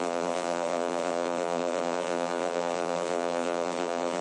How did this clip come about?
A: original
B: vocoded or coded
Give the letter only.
B